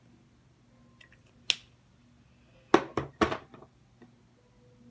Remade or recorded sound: recorded